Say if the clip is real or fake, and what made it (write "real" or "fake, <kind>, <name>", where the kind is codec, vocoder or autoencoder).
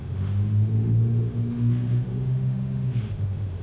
fake, autoencoder, DAC-VAE